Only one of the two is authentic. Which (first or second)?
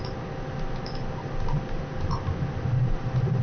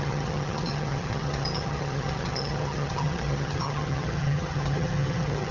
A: first